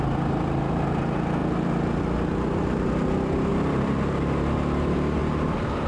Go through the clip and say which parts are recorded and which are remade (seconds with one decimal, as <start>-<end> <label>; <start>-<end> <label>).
0.0-3.5 recorded; 3.5-4.0 remade; 4.0-5.9 recorded

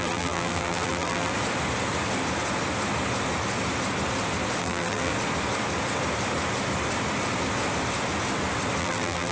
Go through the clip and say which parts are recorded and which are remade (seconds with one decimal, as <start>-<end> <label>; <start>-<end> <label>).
0.0-1.3 remade; 1.3-4.6 recorded; 4.6-5.1 remade; 5.1-8.8 recorded; 8.8-9.3 remade